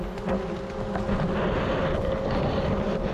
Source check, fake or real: real